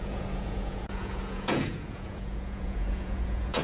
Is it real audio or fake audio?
fake